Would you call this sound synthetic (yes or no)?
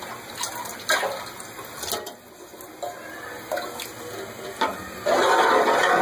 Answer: no